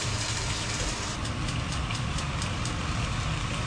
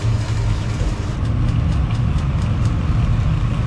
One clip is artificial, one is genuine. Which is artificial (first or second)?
first